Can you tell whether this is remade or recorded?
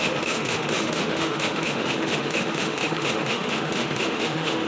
remade